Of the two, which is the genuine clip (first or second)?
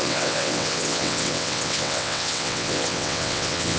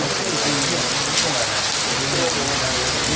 second